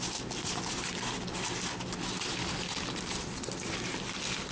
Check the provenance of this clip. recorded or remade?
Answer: recorded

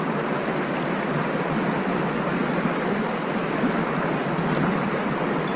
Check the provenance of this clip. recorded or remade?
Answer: recorded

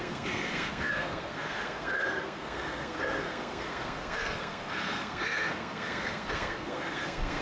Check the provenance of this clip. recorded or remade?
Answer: remade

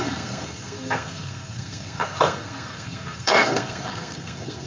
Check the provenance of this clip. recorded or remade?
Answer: remade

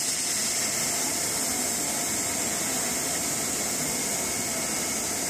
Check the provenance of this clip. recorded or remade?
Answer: recorded